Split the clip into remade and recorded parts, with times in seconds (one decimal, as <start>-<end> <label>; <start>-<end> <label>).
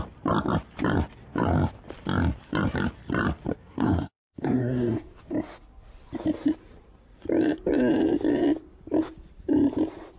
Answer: 0.0-3.5 recorded; 3.5-5.2 remade; 5.2-10.2 recorded